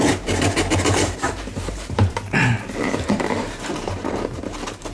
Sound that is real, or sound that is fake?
fake